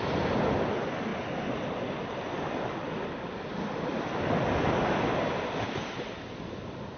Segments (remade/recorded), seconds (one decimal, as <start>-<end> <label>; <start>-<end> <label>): 0.0-7.0 recorded